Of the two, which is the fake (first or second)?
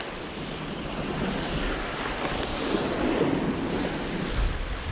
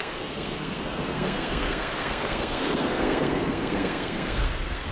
second